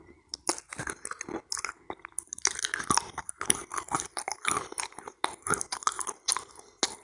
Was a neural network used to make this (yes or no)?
no